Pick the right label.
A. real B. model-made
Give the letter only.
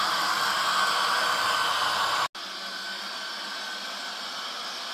A